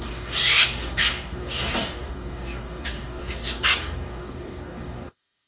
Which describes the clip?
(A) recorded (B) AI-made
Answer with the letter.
B